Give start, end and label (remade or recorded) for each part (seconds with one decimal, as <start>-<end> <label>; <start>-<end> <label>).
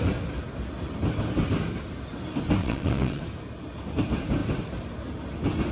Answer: 0.0-2.6 recorded; 2.6-3.2 remade; 3.2-5.7 recorded